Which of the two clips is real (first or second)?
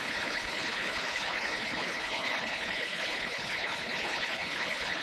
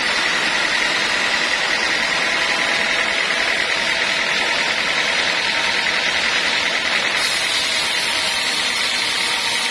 second